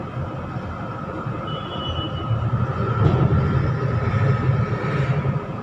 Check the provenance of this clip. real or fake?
real